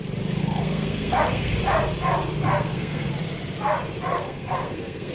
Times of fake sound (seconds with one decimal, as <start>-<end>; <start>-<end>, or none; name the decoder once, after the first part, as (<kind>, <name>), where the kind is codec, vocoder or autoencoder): 0.4-1.5 (codec, SNAC); 2.5-3.1; 4.1-5.1